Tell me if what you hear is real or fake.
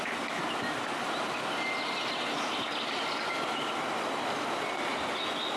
real